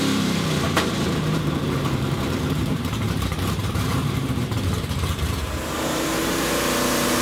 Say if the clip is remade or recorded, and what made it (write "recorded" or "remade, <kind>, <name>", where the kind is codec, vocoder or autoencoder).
remade, vocoder, BigVGAN v2